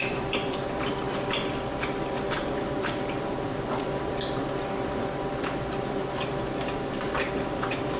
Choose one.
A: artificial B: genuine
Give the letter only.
A